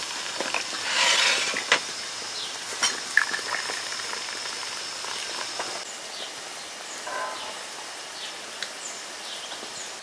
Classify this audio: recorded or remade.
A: recorded